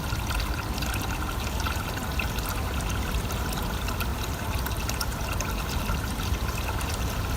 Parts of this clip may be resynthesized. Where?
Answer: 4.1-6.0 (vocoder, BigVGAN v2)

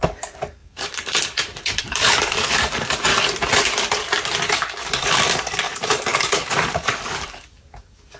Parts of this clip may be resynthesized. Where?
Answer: 0.0-3.1 (codec, DAC); 4.5-8.2